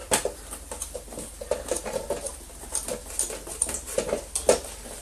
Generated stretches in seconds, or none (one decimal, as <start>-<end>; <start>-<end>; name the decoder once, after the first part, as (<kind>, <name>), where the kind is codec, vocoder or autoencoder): 0.0-0.5 (vocoder, BigVGAN v2)